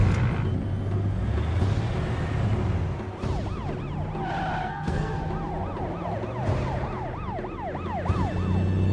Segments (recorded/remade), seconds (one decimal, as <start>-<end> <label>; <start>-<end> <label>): 0.0-4.6 recorded; 4.6-5.1 remade; 5.1-8.9 recorded